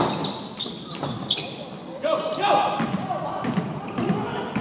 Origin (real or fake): real